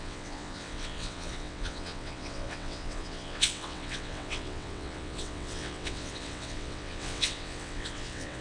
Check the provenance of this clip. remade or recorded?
remade